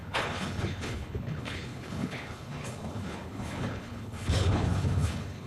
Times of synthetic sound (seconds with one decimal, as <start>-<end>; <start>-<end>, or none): 0.0-5.5

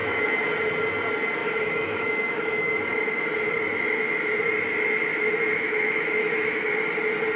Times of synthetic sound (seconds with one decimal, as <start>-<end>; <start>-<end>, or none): 0.0-0.5; 1.4-2.8; 5.1-6.7

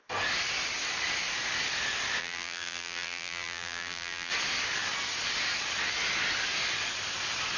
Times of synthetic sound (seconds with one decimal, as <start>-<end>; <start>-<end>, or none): 2.2-4.3

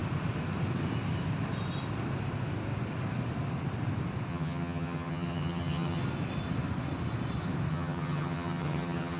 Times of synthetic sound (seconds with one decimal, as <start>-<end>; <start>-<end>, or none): 4.3-6.0; 7.7-9.2

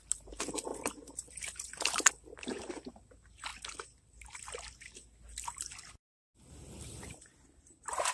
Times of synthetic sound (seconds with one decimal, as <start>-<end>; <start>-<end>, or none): 0.7-2.1; 3.5-4.5

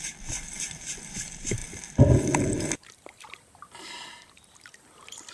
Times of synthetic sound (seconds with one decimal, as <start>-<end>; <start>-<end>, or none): none

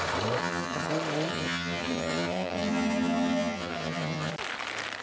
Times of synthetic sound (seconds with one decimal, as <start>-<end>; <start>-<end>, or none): 0.4-0.9; 1.3-4.3

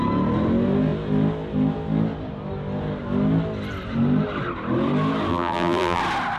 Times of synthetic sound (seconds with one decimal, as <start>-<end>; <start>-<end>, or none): 5.3-6.0